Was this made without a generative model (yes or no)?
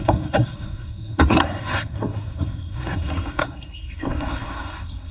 no